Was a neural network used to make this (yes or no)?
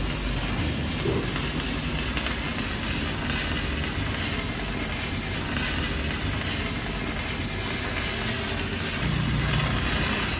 no